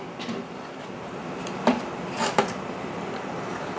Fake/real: fake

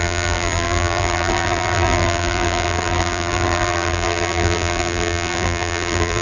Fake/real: fake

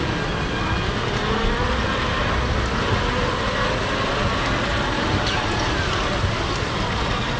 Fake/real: real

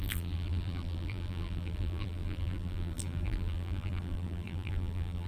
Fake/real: fake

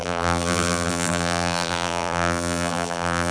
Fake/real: fake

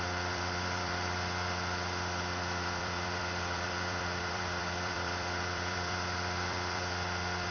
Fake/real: fake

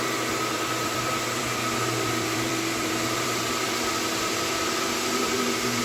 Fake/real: fake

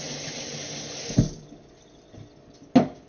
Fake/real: real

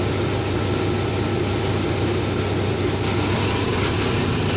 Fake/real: real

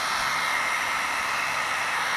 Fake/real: real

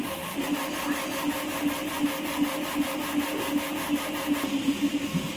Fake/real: real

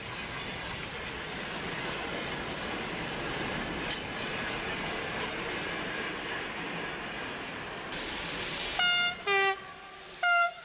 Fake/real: real